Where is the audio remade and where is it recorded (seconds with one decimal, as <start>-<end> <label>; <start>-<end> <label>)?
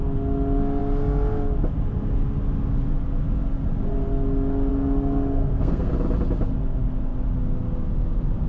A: 0.0-4.7 recorded; 4.7-5.9 remade; 5.9-8.5 recorded